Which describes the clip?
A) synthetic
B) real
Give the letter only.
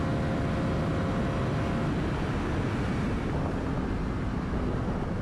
B